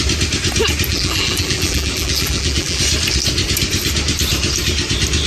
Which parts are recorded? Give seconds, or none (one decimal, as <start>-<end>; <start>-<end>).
0.0-0.9; 2.8-5.3